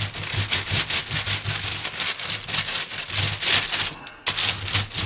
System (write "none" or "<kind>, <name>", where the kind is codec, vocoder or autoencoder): none